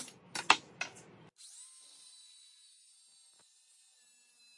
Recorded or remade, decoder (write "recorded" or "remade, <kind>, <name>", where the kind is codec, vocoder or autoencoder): recorded